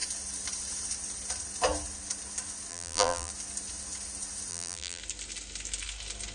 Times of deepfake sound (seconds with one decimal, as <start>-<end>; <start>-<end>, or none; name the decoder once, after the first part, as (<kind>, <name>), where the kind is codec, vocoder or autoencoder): 2.7-3.3 (vocoder, BigVGAN v2); 4.5-5.0